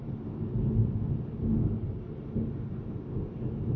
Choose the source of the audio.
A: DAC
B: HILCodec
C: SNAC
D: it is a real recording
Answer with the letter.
D